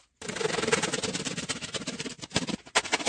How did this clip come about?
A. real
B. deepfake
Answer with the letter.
A